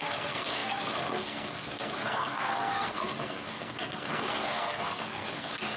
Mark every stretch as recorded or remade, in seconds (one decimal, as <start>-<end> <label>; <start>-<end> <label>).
0.0-5.8 remade